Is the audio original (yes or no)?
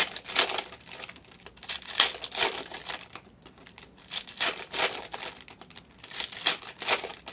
yes